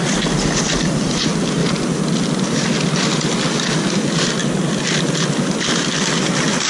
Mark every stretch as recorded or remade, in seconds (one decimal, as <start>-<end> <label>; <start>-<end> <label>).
0.0-6.7 recorded